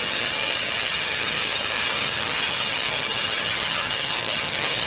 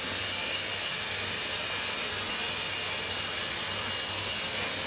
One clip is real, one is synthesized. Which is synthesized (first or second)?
first